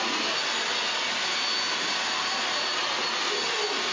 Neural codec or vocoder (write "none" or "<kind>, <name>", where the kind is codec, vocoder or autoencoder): none